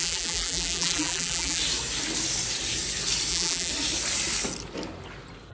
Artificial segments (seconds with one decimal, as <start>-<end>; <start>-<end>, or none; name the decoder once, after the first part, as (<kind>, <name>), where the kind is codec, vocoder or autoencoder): 0.0-1.6 (vocoder, BigVGAN v2); 3.3-3.7